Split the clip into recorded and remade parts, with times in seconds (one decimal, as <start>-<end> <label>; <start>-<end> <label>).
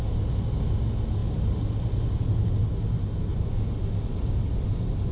0.0-5.1 recorded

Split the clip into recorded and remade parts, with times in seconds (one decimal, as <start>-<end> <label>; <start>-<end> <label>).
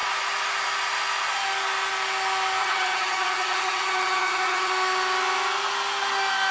0.0-2.6 recorded; 2.6-4.7 remade; 4.7-6.5 recorded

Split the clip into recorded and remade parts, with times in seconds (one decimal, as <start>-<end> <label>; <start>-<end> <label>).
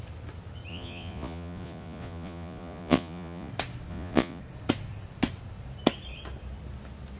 0.0-0.7 recorded; 0.7-3.5 remade; 3.5-3.9 recorded; 3.9-4.4 remade; 4.4-7.2 recorded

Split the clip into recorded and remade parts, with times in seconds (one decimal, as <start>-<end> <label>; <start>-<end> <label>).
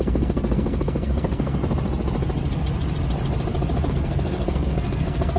0.0-1.6 remade; 1.6-3.9 recorded; 3.9-5.4 remade